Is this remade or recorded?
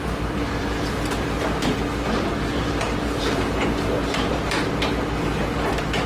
remade